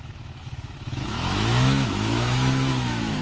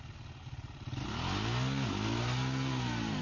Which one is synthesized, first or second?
first